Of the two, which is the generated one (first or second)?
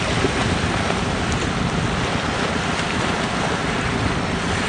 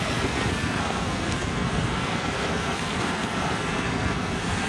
second